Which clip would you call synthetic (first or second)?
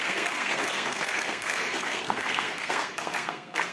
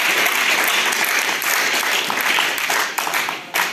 first